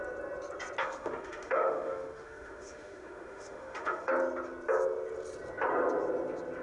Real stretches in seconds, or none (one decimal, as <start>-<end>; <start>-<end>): 0.0-0.8; 4.1-6.6